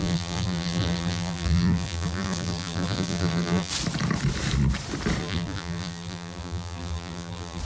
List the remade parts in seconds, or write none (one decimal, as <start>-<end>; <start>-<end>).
0.0-3.7; 5.2-7.6